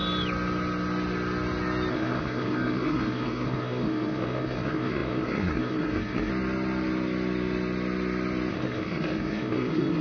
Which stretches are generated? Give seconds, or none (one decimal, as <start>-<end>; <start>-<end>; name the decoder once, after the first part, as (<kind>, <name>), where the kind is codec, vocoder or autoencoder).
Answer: 1.9-6.3 (codec, SNAC); 8.5-10.0